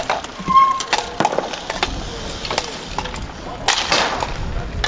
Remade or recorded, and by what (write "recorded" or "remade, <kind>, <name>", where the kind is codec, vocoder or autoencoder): recorded